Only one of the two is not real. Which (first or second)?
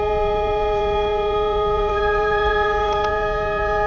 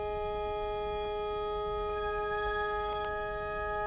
first